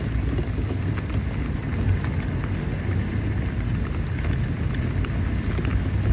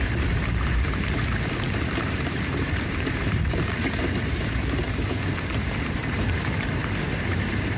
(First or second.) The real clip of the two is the first